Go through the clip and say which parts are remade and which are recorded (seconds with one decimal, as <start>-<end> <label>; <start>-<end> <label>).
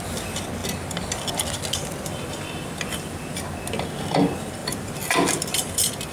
0.0-4.6 recorded; 4.6-5.6 remade; 5.6-6.1 recorded